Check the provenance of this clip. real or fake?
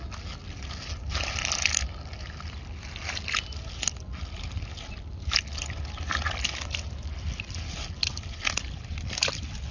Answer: real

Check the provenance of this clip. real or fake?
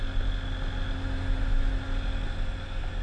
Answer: real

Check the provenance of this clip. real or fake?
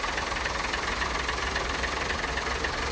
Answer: real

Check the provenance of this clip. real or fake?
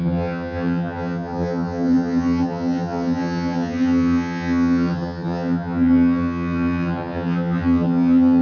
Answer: fake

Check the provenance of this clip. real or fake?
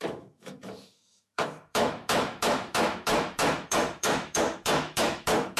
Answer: fake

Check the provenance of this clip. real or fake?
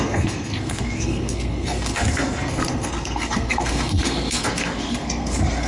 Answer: fake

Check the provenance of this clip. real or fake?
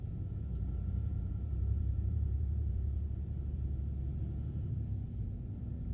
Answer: fake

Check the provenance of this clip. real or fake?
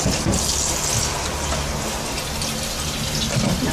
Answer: real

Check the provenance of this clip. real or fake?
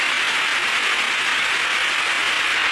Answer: real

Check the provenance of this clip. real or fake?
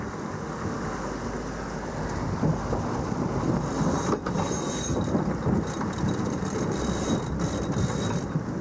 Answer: real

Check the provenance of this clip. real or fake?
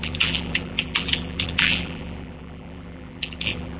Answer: fake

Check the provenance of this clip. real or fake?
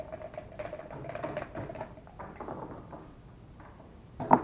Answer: real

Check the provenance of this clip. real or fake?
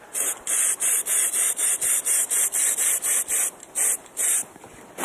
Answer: real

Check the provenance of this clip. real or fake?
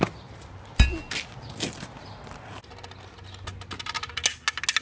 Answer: real